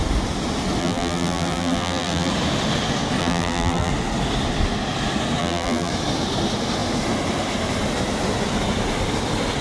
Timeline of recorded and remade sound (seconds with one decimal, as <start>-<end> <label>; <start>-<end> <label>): 0.0-0.8 recorded; 0.8-2.3 remade; 2.3-3.2 recorded; 3.2-3.9 remade; 3.9-5.4 recorded; 5.4-5.9 remade; 5.9-9.6 recorded